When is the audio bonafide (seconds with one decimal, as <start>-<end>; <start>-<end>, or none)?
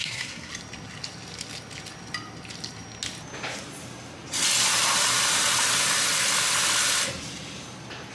0.5-8.1